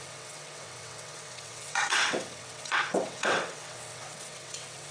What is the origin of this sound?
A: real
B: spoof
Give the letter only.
B